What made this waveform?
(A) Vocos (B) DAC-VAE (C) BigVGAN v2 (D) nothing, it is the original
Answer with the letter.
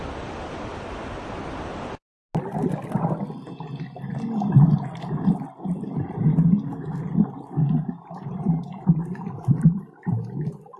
D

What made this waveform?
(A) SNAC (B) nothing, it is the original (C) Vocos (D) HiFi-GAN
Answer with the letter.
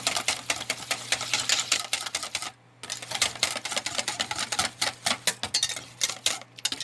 B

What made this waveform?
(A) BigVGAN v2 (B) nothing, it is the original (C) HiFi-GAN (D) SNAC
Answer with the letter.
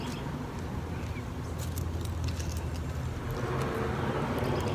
B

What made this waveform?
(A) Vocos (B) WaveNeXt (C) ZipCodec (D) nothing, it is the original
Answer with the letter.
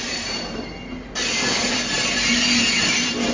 D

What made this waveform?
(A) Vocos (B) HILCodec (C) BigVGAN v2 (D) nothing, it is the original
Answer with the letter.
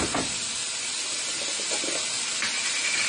D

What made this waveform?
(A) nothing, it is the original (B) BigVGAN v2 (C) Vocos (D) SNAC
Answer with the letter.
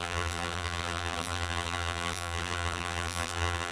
B